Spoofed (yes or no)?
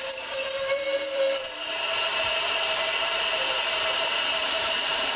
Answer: yes